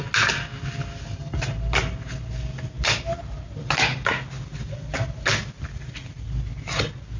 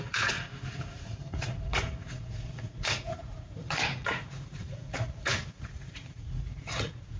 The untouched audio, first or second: first